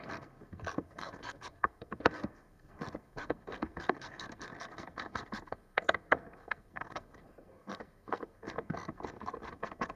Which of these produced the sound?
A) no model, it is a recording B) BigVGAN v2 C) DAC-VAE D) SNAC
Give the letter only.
D